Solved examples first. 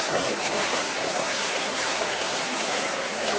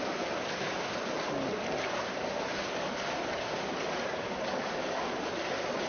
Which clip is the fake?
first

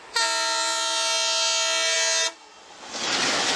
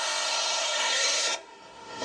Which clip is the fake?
second